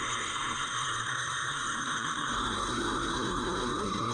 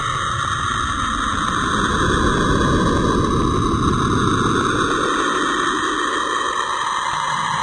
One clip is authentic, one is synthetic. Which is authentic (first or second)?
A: second